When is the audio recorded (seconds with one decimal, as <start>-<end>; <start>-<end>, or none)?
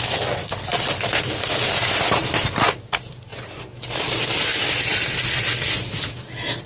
0.0-6.7